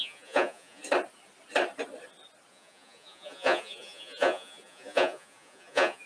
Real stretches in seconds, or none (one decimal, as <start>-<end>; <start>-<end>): 0.8-2.5